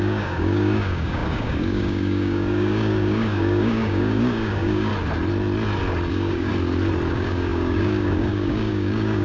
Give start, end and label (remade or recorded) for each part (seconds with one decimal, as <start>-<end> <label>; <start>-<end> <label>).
0.0-4.9 remade; 4.9-6.1 recorded; 6.1-6.5 remade; 6.5-7.1 recorded; 7.1-9.2 remade